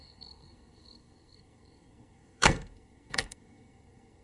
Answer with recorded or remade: remade